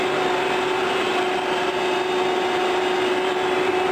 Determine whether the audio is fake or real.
fake